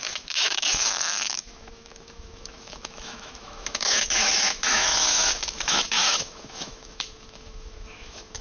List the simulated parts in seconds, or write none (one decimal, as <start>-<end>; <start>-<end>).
0.0-8.4